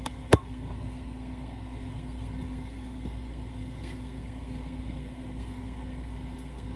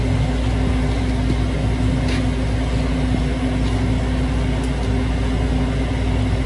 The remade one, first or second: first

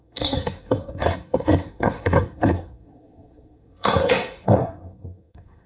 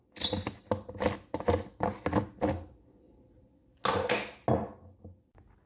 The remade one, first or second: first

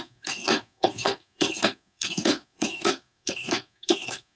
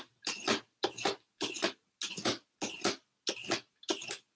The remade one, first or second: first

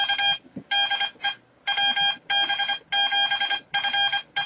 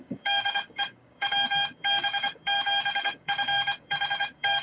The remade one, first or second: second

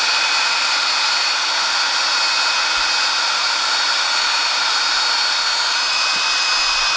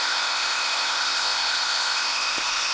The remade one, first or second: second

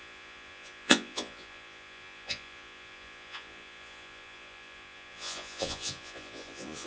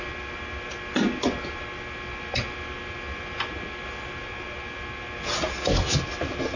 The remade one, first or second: first